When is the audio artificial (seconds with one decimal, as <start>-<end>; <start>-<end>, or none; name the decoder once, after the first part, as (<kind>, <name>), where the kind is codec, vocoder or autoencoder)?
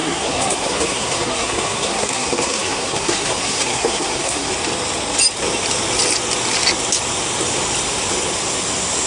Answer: 0.0-4.5 (codec, SNAC)